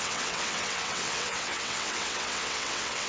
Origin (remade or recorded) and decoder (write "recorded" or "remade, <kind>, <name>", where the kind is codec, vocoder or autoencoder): remade, vocoder, WaveNeXt